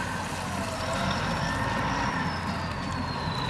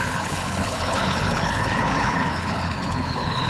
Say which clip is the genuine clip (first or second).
first